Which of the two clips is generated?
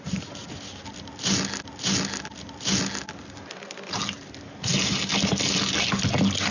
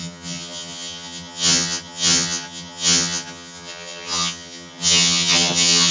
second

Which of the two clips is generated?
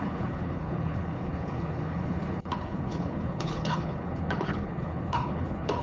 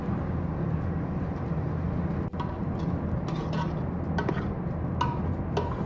first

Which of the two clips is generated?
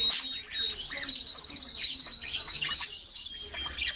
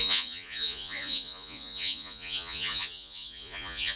second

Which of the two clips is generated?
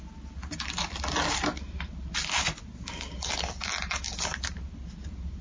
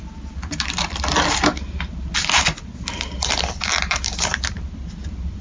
second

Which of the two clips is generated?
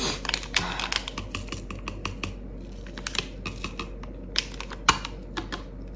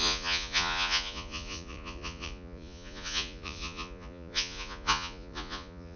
second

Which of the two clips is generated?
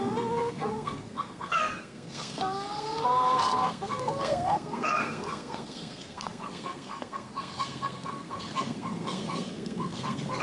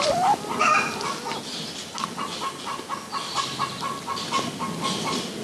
first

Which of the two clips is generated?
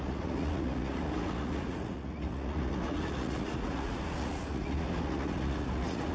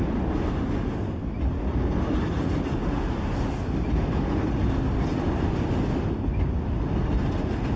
first